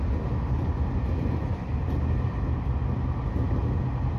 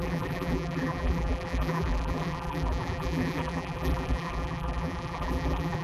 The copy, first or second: second